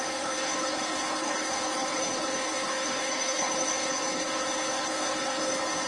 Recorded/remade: remade